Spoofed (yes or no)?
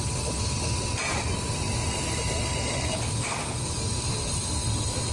no